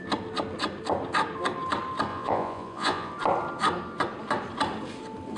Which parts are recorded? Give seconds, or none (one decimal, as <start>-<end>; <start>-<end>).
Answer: 0.0-2.1; 3.1-5.4